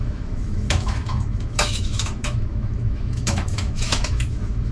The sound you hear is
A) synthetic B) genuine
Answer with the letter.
A